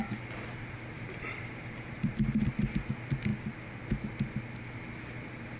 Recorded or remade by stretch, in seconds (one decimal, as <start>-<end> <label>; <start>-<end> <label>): 0.0-2.5 remade; 2.5-5.6 recorded